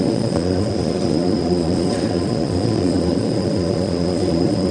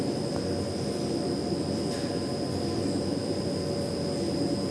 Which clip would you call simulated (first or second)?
first